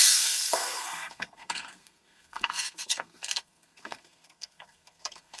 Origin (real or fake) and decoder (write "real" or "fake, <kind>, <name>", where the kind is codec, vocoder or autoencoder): fake, codec, SNAC